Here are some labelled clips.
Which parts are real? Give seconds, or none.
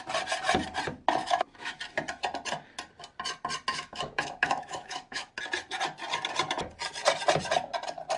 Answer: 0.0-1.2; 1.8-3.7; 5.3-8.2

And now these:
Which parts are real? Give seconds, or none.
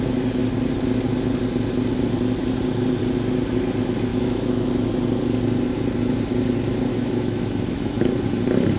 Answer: 0.0-4.1; 4.9-6.9; 7.9-8.8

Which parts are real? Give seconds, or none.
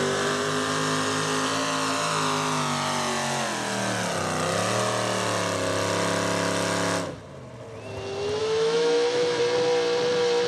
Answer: 0.0-8.4; 9.4-10.5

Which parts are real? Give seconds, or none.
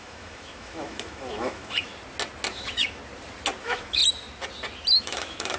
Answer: 1.9-2.5; 3.0-3.6; 4.0-5.0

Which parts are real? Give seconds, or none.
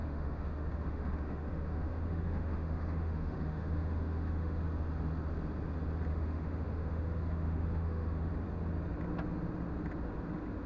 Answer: 4.6-6.1; 8.3-10.7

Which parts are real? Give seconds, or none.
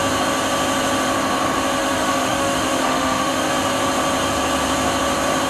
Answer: 0.0-1.8; 3.5-5.5